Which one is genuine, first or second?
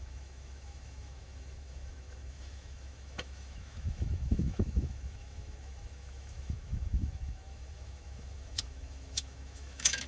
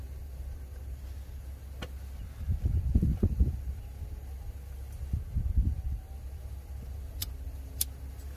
second